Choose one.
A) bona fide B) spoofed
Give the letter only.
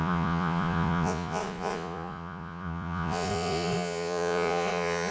B